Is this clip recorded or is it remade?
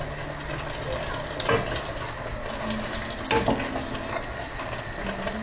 recorded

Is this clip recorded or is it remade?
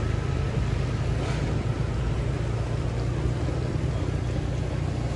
recorded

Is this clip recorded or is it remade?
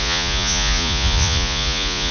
remade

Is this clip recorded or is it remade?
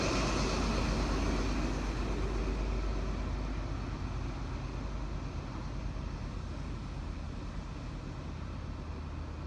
recorded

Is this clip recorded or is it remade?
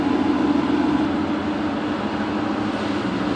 recorded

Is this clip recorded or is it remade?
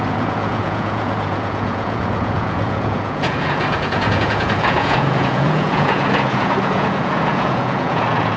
remade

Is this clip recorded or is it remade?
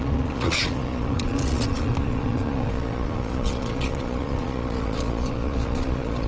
remade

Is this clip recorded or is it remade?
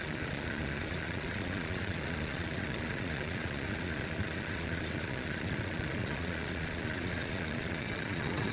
remade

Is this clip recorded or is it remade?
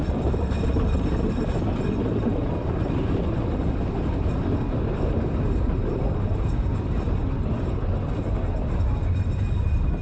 recorded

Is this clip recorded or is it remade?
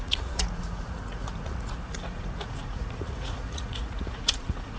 remade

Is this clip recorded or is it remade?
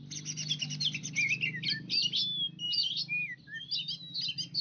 recorded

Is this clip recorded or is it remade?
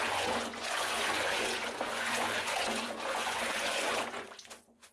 remade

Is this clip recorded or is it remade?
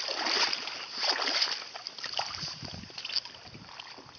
recorded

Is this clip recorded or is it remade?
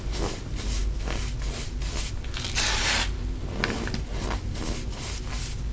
recorded